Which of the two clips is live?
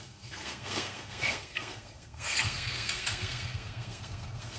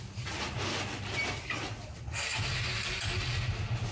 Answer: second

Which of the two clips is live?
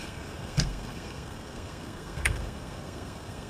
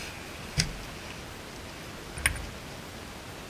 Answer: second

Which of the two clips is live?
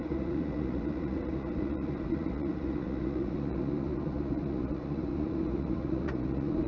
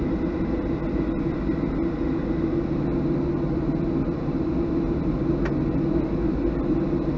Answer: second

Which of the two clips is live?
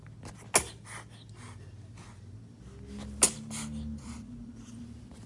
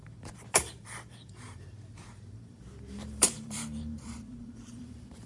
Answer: first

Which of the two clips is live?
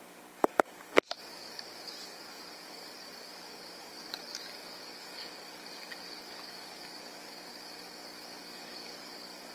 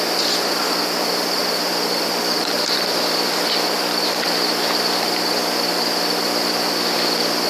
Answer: second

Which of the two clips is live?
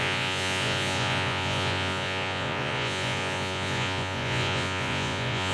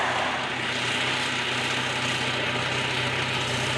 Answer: second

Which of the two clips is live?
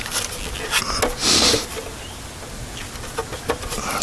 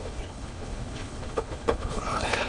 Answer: first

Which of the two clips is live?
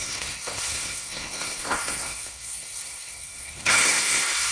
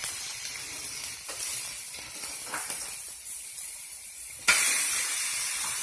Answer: second